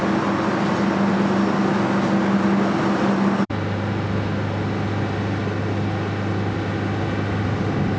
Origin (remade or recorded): recorded